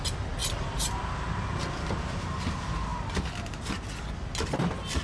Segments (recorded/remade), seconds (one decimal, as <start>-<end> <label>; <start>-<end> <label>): 0.0-5.0 recorded